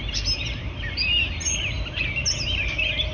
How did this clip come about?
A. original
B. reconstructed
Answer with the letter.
A